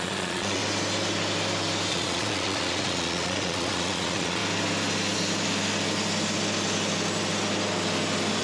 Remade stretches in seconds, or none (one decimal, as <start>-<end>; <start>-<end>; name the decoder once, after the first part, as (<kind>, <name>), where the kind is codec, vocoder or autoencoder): 0.0-0.6 (vocoder, Vocos); 1.9-4.4